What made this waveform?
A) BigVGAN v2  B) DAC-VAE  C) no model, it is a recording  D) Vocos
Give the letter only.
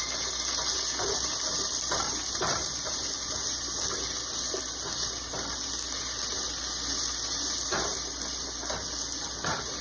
C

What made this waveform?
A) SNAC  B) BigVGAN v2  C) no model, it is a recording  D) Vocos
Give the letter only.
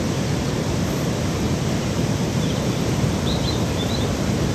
B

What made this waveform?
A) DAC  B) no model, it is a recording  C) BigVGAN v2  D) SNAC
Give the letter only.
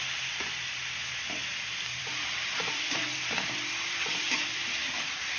C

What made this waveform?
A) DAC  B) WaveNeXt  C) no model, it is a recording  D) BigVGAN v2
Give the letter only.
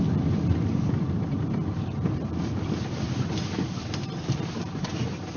D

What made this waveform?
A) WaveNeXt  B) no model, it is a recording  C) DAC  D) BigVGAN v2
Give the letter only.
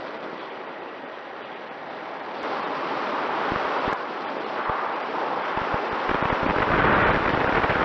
D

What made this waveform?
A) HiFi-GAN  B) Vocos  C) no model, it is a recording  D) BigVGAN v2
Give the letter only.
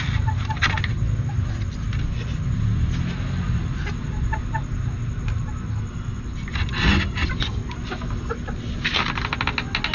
C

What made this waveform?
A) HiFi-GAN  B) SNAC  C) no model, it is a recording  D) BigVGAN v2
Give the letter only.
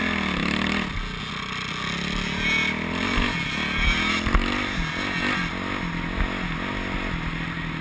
C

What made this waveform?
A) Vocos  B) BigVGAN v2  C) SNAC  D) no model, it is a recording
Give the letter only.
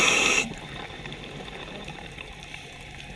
B